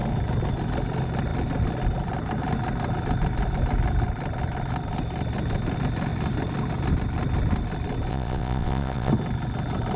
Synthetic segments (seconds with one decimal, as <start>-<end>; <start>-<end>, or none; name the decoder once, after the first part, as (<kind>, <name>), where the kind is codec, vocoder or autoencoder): 8.1-9.1 (vocoder, WaveNeXt)